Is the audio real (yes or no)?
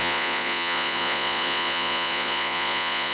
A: no